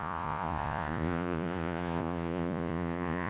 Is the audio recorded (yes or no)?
no